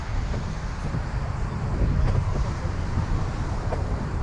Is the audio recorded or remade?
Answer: remade